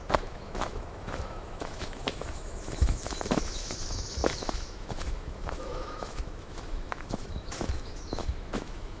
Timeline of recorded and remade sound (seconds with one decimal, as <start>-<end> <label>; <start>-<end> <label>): 0.0-9.0 remade